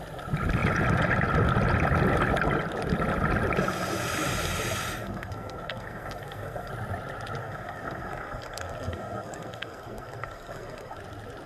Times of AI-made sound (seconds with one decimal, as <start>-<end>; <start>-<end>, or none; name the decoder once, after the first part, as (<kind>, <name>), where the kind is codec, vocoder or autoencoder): 5.0-6.7 (codec, SNAC); 7.4-11.0